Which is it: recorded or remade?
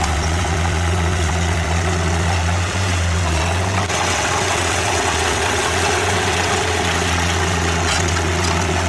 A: remade